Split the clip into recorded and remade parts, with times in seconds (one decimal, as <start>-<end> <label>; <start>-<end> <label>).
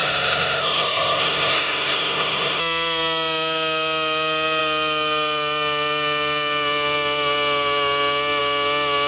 0.0-2.6 remade; 2.6-9.1 recorded